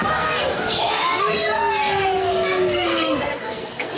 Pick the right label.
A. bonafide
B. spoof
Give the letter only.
B